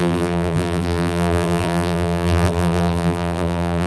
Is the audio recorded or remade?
remade